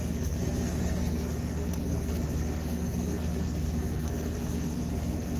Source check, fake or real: fake